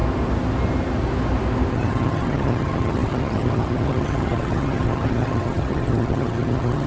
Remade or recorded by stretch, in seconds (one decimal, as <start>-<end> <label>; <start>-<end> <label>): 0.0-1.7 recorded; 1.7-6.9 remade